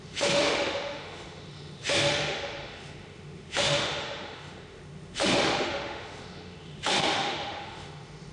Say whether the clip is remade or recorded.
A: remade